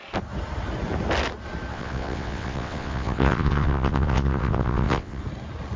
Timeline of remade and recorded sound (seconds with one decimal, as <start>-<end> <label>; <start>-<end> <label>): 0.0-1.7 recorded; 1.7-5.2 remade; 5.2-5.8 recorded